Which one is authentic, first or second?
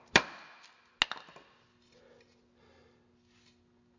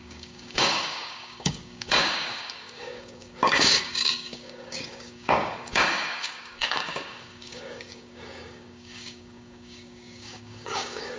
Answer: first